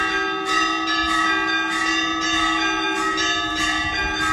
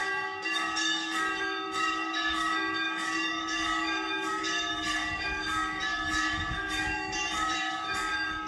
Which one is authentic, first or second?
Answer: first